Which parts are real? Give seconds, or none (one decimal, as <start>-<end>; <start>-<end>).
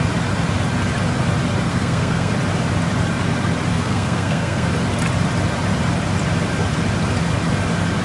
0.0-1.7; 2.3-3.7; 4.7-8.0